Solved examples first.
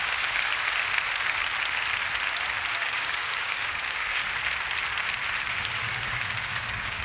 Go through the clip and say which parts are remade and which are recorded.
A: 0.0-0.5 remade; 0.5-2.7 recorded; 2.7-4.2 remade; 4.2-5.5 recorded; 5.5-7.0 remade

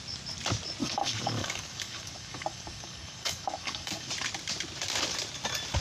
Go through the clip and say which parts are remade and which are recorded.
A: 0.0-0.8 recorded; 0.8-4.1 remade; 4.1-5.8 recorded